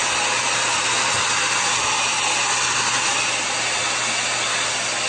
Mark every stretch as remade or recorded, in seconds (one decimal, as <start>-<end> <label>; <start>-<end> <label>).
0.0-5.1 recorded